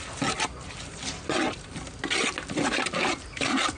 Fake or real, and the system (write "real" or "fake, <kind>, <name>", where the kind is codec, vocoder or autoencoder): real